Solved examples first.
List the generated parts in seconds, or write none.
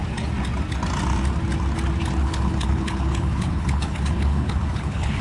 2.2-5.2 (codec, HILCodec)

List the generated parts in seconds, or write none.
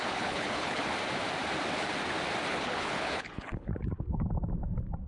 0.0-0.8 (codec, HILCodec); 2.5-3.7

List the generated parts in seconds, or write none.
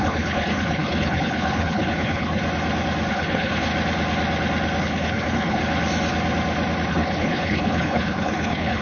0.0-2.4 (codec, HILCodec); 3.1-3.7; 4.8-5.6; 6.9-8.8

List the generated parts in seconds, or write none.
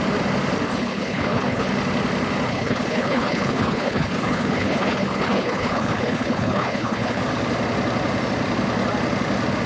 0.7-1.7 (codec, HILCodec); 2.5-7.2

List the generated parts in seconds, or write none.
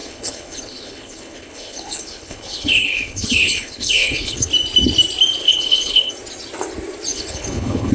0.0-4.5 (codec, HILCodec); 5.4-6.1; 7.1-7.9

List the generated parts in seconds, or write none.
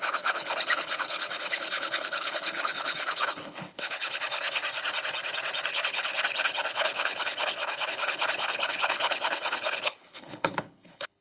0.0-4.6 (codec, HILCodec); 5.7-11.2